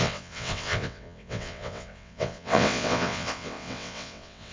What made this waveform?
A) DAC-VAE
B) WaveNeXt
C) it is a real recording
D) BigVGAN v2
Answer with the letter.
B